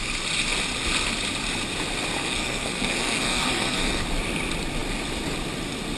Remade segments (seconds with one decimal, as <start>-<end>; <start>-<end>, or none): 2.2-4.0